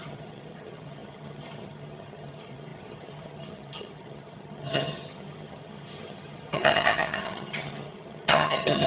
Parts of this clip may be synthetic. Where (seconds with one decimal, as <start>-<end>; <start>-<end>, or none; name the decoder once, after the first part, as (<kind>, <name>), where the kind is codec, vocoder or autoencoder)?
0.0-8.9 (vocoder, HiFi-GAN)